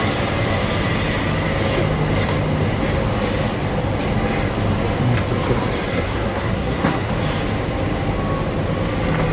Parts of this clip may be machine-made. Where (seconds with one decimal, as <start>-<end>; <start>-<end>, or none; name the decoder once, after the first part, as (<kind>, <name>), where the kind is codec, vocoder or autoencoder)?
5.9-7.1 (codec, SNAC)

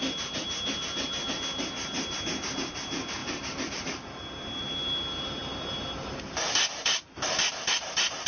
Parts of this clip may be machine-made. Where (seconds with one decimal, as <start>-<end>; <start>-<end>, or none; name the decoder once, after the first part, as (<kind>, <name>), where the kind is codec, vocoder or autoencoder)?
none

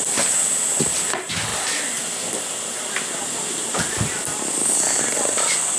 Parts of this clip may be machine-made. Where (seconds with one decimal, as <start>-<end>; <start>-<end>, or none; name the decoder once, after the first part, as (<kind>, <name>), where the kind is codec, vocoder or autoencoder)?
none

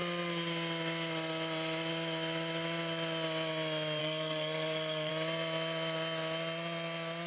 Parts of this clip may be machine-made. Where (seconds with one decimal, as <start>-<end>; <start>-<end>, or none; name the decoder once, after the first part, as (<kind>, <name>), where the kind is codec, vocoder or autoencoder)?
4.0-5.1 (codec, SNAC)

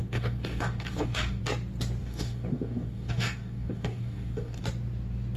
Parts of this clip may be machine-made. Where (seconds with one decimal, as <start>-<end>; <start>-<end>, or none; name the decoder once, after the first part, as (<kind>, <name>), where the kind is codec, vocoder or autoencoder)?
0.0-1.4 (codec, DAC); 2.0-4.6

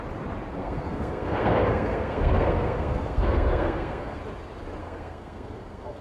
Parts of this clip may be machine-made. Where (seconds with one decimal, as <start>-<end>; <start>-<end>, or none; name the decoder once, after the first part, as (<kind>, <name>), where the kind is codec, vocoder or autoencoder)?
0.6-4.2 (codec, SNAC); 4.8-6.0

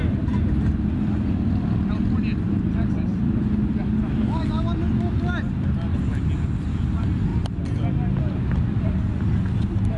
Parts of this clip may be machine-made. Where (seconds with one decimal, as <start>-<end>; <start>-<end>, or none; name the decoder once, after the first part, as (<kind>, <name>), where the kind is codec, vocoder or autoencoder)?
none

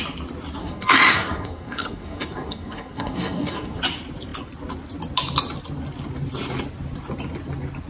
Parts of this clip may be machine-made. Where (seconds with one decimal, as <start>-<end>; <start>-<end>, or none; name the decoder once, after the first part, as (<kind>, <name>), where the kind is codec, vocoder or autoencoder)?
0.6-3.8 (codec, SNAC)